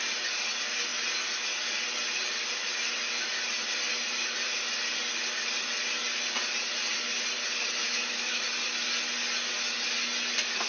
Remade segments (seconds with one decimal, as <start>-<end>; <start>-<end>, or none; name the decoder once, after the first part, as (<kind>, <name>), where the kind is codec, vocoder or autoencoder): 7.8-8.4 (autoencoder, DAC-VAE)